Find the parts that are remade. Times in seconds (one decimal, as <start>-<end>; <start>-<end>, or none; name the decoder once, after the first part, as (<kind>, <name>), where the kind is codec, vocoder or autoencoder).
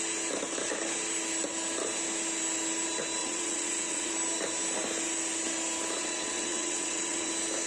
3.2-4.1 (vocoder, WaveNeXt); 6.0-7.3